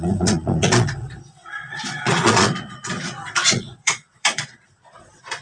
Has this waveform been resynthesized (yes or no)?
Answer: yes